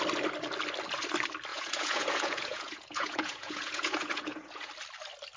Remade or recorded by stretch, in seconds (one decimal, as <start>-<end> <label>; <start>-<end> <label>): 0.0-1.5 recorded; 1.5-4.7 remade; 4.7-5.4 recorded

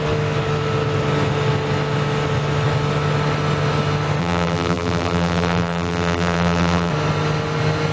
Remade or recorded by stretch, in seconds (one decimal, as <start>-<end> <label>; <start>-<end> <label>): 0.0-4.2 recorded; 4.2-6.9 remade; 6.9-7.9 recorded

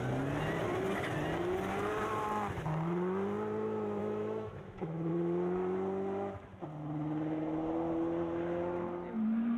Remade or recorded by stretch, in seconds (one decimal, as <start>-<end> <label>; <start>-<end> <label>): 0.0-4.0 recorded; 4.0-5.1 remade; 5.1-9.6 recorded

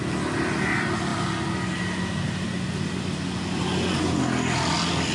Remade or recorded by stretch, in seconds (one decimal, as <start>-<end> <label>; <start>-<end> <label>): 0.0-5.1 recorded

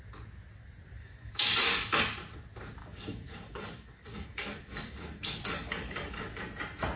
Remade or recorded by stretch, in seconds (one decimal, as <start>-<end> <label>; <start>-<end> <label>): 0.0-1.0 recorded; 1.0-2.0 remade; 2.0-2.8 recorded; 2.8-6.4 remade; 6.4-7.0 recorded

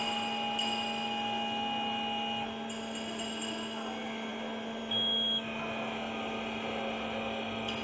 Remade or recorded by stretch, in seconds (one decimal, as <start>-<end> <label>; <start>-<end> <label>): 0.0-7.8 recorded

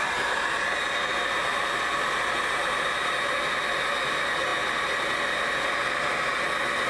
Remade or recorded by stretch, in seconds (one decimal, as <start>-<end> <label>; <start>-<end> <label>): 0.0-6.9 recorded

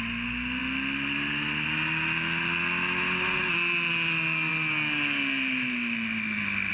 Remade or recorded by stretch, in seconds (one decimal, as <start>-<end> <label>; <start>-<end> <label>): 0.0-6.7 recorded